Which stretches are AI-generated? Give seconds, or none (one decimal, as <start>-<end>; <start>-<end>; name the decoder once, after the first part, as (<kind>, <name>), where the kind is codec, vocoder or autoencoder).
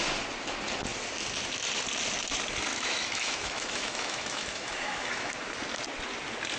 2.7-5.3 (autoencoder, DAC-VAE)